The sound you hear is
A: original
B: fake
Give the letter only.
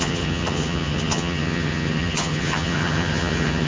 B